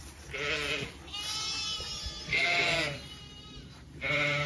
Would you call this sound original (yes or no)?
yes